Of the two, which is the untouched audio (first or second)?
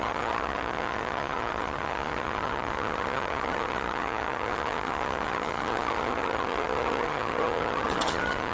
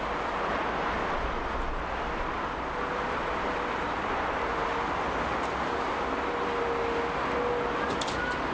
second